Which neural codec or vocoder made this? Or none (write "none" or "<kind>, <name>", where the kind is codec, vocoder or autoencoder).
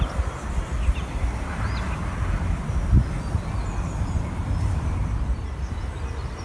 none